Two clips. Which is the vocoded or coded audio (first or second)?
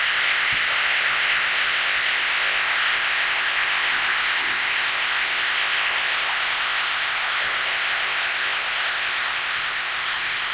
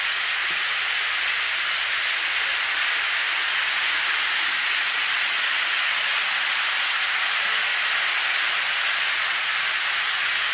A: first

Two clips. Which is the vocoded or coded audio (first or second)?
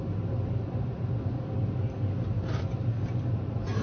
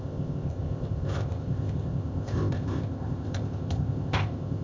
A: second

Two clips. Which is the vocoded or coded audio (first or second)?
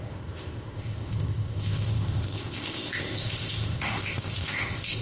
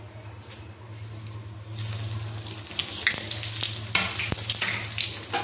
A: first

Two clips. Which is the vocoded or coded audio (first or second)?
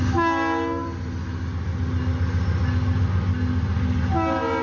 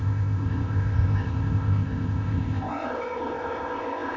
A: second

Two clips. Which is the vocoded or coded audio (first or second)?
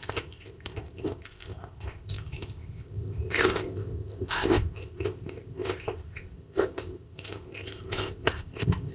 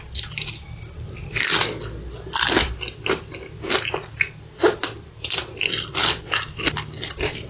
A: first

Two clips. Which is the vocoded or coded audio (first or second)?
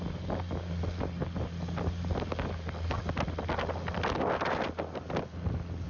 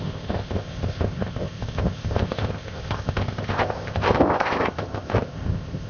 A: second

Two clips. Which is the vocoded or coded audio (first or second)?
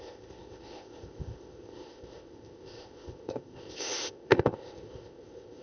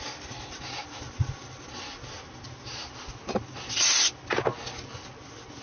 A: first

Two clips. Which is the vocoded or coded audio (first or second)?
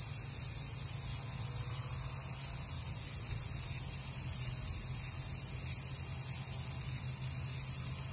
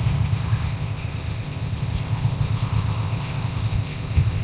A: second